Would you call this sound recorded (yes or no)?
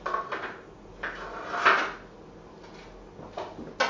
yes